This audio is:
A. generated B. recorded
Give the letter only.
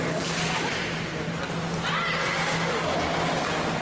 B